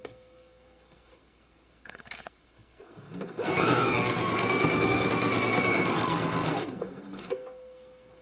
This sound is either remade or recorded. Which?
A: remade